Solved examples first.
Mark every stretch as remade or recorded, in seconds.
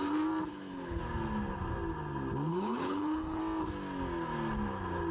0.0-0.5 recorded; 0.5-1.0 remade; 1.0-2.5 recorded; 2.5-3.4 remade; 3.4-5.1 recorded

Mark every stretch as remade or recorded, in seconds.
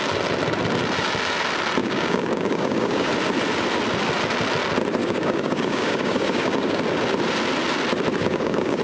0.0-1.8 recorded; 1.8-3.1 remade; 3.1-5.0 recorded; 5.0-6.8 remade; 6.8-8.2 recorded; 8.2-8.8 remade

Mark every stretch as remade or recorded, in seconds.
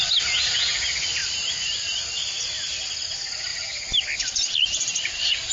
0.0-1.2 recorded; 1.2-2.0 remade; 2.0-4.9 recorded; 4.9-5.5 remade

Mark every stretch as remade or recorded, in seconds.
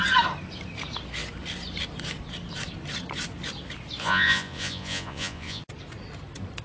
0.0-4.0 recorded; 4.0-5.6 remade; 5.6-6.6 recorded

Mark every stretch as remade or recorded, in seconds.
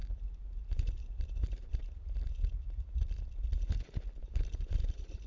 0.0-3.2 remade; 3.2-4.2 recorded; 4.2-5.3 remade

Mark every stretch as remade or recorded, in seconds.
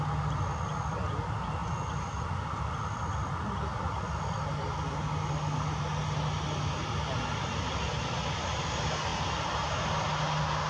0.0-1.6 recorded; 1.6-2.3 remade; 2.3-10.7 recorded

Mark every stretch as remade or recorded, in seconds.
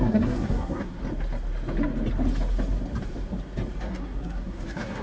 0.0-1.0 remade; 1.0-3.9 recorded; 3.9-5.0 remade